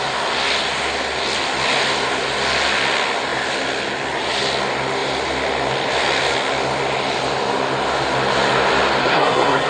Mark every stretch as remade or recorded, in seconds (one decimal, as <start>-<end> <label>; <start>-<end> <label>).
0.0-9.0 recorded; 9.0-9.7 remade